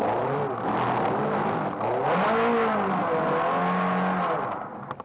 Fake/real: real